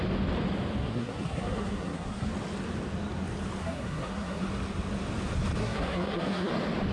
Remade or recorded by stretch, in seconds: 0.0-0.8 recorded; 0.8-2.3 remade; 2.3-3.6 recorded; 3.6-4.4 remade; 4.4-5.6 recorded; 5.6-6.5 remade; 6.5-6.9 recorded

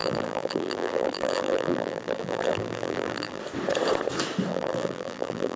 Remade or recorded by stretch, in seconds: 0.0-3.4 remade; 3.4-4.5 recorded; 4.5-5.6 remade

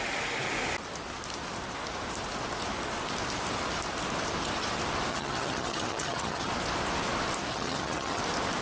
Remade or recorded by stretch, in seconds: 0.0-5.1 recorded; 5.1-6.5 remade; 6.5-7.5 recorded; 7.5-8.2 remade; 8.2-8.6 recorded

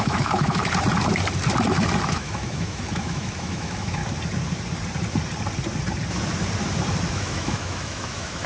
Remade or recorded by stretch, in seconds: 0.0-0.6 remade; 0.6-2.1 recorded; 2.1-4.0 remade; 4.0-7.1 recorded; 7.1-8.5 remade